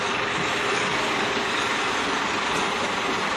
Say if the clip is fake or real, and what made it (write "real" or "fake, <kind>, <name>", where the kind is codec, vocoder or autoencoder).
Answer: real